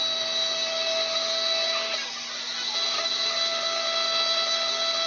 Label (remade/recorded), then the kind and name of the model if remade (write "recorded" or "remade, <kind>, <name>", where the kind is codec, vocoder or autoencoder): recorded